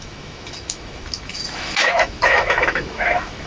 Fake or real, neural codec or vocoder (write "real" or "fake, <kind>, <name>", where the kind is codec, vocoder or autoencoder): fake, autoencoder, DAC-VAE